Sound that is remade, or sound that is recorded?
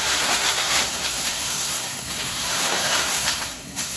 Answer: remade